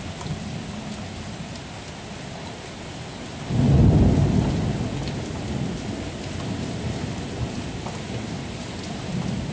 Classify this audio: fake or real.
real